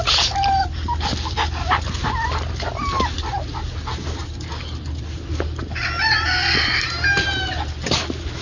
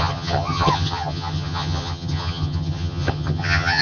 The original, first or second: first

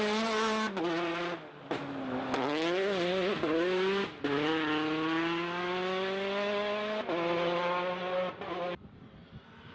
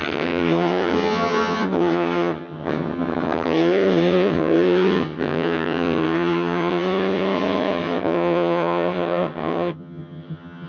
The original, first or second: first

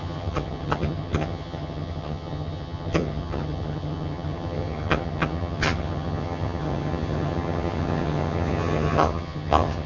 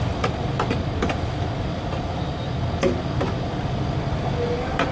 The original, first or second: second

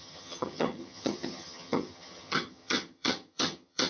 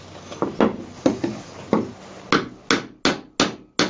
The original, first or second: second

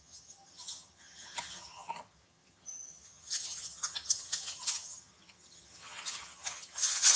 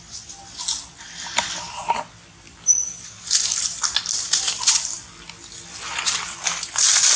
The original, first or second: second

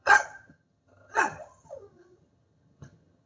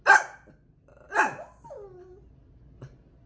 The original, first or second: second